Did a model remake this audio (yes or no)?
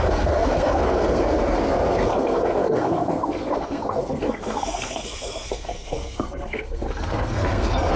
yes